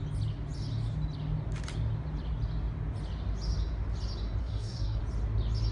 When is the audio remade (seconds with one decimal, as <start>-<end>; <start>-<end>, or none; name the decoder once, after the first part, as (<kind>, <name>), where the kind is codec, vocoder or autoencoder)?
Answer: 4.4-5.0 (codec, SNAC)